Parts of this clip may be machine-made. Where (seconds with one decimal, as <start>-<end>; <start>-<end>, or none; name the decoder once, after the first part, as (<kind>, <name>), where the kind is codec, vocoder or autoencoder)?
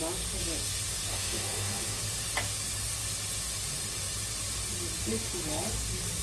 1.1-2.0 (autoencoder, DAC-VAE)